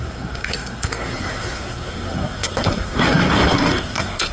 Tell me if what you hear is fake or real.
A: fake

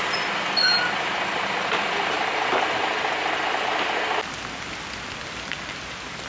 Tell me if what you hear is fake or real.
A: real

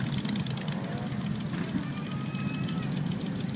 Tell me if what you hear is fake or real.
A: real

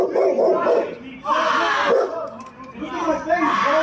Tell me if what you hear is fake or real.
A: real